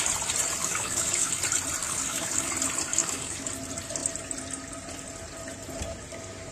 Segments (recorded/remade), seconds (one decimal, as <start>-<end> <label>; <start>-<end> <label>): 0.0-0.6 recorded; 0.6-1.4 remade; 1.4-1.8 recorded; 1.8-2.5 remade; 2.5-2.9 recorded; 2.9-3.5 remade; 3.5-6.5 recorded